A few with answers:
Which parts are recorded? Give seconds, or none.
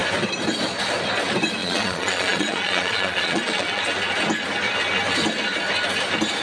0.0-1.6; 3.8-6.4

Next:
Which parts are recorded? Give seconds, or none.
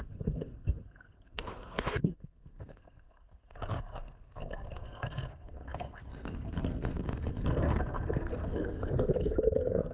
none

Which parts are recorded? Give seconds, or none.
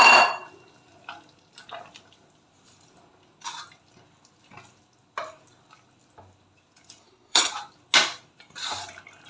0.0-7.0; 7.5-9.3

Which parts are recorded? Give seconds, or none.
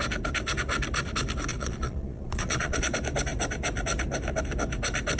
0.0-1.5; 2.8-5.2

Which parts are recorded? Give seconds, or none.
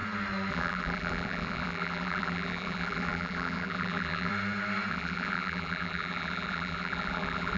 0.0-0.5; 4.3-4.9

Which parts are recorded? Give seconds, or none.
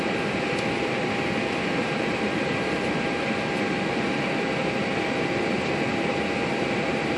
0.0-1.8; 6.1-7.2